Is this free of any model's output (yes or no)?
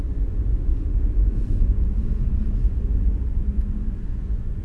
no